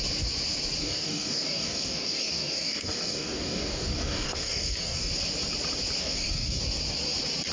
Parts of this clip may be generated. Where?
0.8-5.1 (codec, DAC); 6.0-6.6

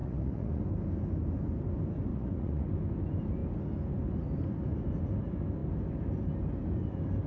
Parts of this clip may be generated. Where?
0.0-0.6 (vocoder, Vocos); 2.1-2.7

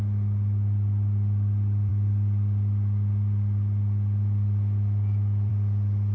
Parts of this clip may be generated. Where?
none

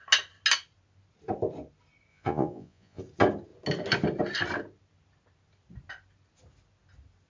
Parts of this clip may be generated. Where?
2.1-3.0 (vocoder, Vocos)

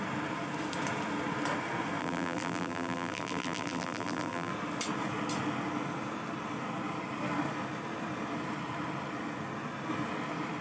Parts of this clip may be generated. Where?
2.0-4.5 (vocoder, BigVGAN v2)